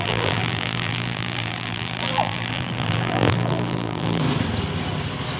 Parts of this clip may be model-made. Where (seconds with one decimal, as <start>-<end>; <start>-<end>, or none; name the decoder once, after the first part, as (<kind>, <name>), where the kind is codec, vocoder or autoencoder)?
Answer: 0.0-4.2 (vocoder, BigVGAN v2)